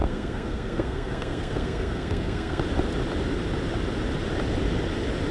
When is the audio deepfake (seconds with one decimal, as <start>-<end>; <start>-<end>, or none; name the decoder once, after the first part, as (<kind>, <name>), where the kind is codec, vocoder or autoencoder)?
0.0-2.6 (codec, SNAC)